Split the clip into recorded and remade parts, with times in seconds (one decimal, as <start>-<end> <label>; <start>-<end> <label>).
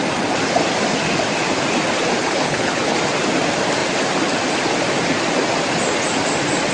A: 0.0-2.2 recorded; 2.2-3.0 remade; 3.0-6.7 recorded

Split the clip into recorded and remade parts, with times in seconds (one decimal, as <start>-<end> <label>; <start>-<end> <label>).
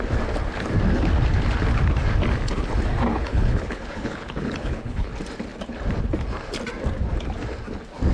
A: 0.0-3.1 recorded; 3.1-5.1 remade; 5.1-8.1 recorded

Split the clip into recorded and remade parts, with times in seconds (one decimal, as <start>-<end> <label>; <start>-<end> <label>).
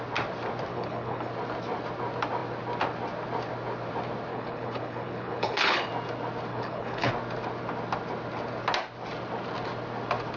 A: 0.0-0.7 recorded; 0.7-1.3 remade; 1.3-4.3 recorded; 4.3-5.9 remade; 5.9-6.5 recorded; 6.5-7.1 remade; 7.1-10.4 recorded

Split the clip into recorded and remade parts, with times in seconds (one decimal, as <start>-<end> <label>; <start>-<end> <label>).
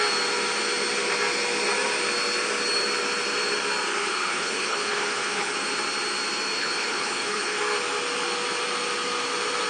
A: 0.0-4.0 recorded; 4.0-5.5 remade; 5.5-6.6 recorded; 6.6-7.6 remade; 7.6-9.7 recorded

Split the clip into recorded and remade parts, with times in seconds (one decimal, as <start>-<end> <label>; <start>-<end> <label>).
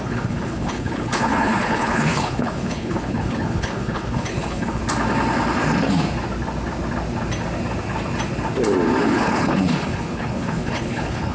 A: 0.0-4.8 remade; 4.8-9.0 recorded; 9.0-11.3 remade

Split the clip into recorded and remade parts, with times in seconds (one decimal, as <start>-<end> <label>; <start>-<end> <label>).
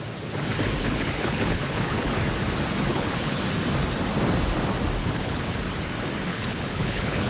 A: 0.0-0.8 recorded; 0.8-2.1 remade; 2.1-2.9 recorded; 2.9-3.4 remade; 3.4-5.0 recorded; 5.0-5.6 remade; 5.6-6.3 recorded; 6.3-7.3 remade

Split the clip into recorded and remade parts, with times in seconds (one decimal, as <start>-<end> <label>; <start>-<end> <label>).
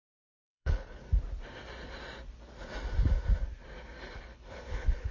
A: 0.0-1.0 remade; 1.0-4.1 recorded; 4.1-5.1 remade